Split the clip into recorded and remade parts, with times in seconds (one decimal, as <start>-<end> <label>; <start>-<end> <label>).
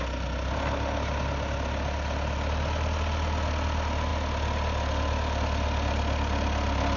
0.0-7.0 recorded